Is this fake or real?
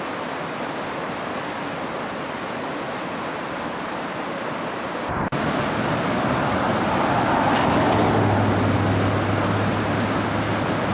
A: real